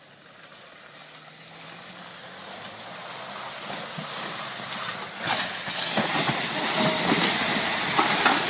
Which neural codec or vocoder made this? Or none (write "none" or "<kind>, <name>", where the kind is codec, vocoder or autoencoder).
none